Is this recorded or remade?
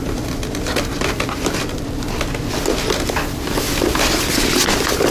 recorded